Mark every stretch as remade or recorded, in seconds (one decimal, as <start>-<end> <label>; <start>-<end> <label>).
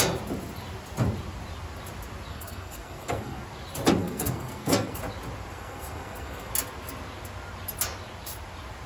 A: 0.0-2.3 recorded; 2.3-3.4 remade; 3.4-4.0 recorded; 4.0-5.0 remade; 5.0-5.5 recorded; 5.5-6.5 remade; 6.5-8.9 recorded